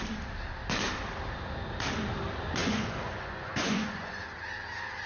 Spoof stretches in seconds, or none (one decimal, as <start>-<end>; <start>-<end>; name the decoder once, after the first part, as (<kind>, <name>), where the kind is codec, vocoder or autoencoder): 2.6-4.2 (vocoder, Vocos)